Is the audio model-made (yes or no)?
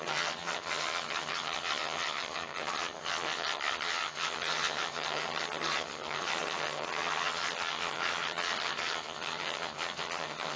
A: yes